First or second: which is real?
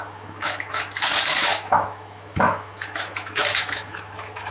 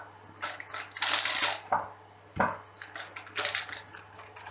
second